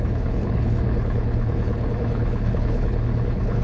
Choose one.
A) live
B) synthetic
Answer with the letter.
B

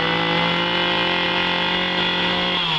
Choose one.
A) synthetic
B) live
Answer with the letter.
B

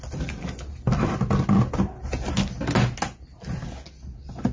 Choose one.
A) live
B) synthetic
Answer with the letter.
A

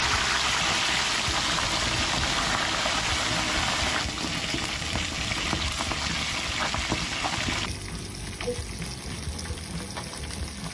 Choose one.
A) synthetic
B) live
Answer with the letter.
B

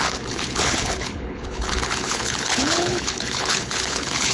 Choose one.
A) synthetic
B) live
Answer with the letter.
A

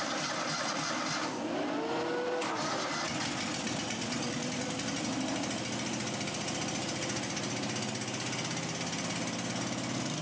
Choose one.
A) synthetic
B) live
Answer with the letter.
B